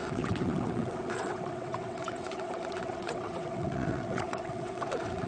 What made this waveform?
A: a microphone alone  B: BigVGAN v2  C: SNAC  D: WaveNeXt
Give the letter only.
D